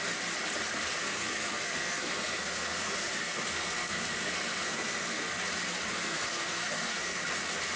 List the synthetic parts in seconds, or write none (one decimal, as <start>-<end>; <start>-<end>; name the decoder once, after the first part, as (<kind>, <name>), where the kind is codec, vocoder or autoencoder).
1.0-5.4 (codec, SNAC); 5.9-7.2